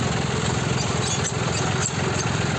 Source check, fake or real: real